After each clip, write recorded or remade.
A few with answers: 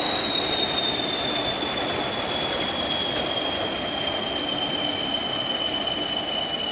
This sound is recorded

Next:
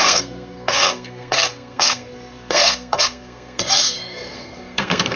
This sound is remade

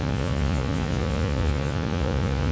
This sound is remade